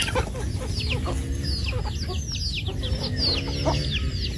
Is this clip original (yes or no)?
yes